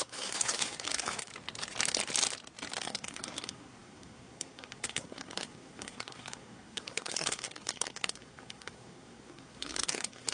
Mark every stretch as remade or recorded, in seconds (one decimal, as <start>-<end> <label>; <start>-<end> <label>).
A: 0.0-1.3 remade; 1.3-2.8 recorded; 2.8-10.3 remade